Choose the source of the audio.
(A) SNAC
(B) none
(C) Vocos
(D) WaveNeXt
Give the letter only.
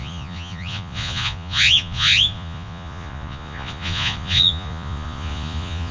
C